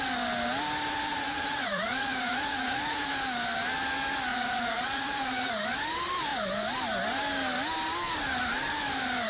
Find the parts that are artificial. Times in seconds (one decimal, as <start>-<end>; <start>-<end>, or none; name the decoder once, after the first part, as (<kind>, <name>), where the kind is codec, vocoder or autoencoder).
1.1-3.1 (vocoder, Vocos); 4.3-5.5